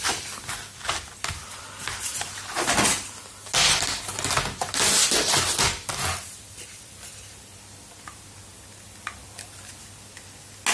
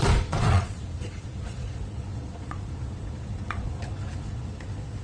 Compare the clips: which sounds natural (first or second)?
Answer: first